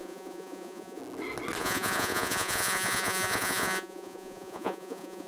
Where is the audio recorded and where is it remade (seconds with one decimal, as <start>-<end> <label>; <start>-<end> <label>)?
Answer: 0.0-1.0 remade; 1.0-1.6 recorded; 1.6-5.3 remade